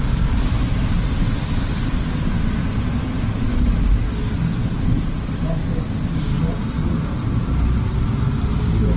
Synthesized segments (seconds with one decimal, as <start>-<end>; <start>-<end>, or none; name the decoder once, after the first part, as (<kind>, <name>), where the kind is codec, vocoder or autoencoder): none